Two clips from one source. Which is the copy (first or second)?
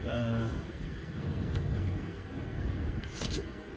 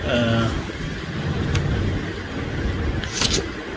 first